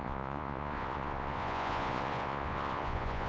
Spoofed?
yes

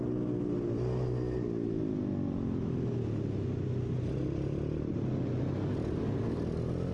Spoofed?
no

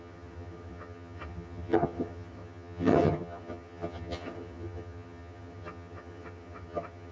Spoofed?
yes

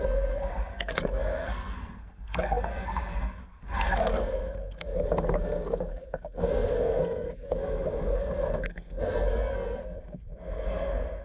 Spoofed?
yes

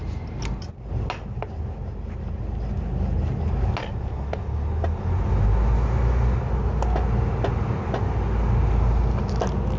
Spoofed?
no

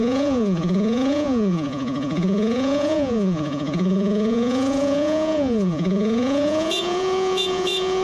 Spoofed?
yes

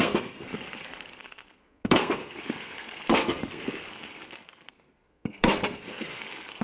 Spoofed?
yes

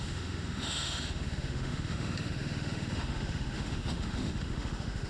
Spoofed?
yes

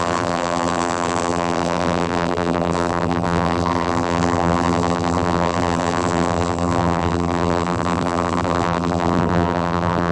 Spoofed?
yes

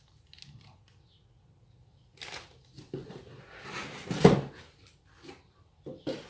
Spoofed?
no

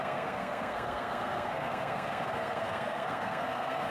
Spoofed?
yes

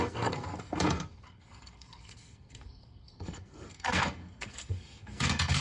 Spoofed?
yes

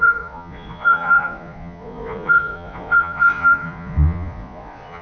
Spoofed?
yes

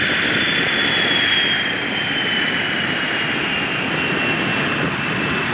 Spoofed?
no